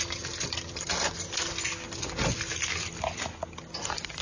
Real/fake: real